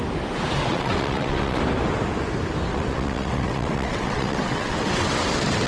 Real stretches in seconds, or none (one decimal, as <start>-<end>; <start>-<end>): 0.0-0.6; 1.6-2.7